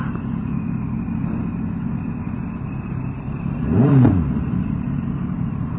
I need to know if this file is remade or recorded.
recorded